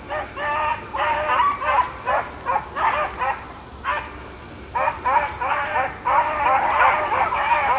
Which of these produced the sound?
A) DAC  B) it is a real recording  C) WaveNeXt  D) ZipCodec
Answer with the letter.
B